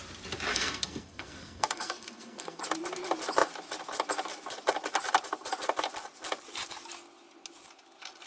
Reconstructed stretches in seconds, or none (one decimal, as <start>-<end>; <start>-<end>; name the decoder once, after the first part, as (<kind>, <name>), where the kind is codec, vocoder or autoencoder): 0.5-2.6 (codec, SNAC)